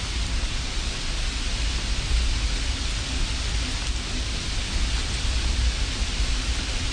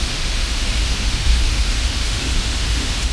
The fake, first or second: second